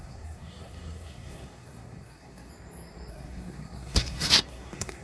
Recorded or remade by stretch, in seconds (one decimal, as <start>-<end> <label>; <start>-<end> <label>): 0.0-2.5 remade; 2.5-3.1 recorded; 3.1-5.0 remade